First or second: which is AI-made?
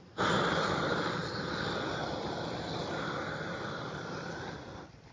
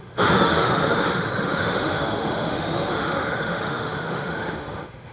second